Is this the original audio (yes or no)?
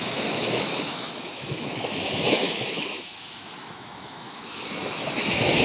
no